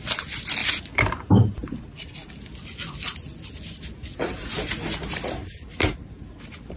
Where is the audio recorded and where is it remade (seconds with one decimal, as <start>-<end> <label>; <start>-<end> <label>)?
0.0-0.6 recorded; 0.6-1.3 remade; 1.3-5.4 recorded; 5.4-6.8 remade